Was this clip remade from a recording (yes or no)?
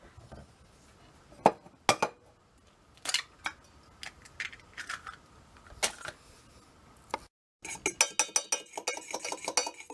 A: no